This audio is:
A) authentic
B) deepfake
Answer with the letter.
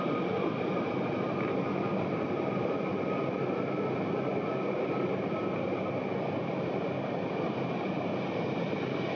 A